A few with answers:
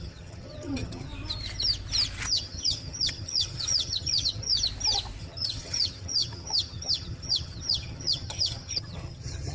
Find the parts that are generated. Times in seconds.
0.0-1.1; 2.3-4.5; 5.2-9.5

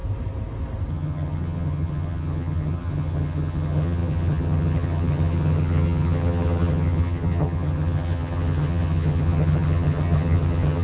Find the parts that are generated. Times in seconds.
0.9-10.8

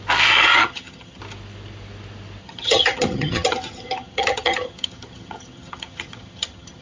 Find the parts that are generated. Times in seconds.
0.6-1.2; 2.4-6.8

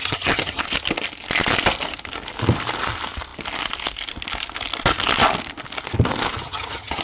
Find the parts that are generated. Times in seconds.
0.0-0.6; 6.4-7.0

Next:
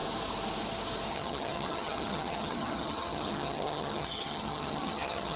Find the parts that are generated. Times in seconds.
1.1-5.4